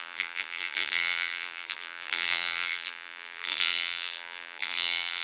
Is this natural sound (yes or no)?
no